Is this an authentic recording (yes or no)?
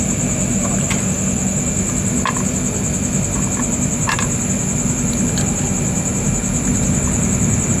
yes